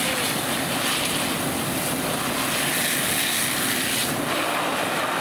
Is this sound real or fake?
real